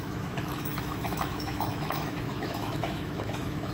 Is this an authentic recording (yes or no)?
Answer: no